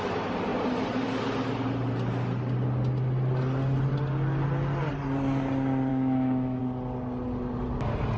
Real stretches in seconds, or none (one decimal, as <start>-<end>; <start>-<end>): 0.0-5.9; 6.6-8.2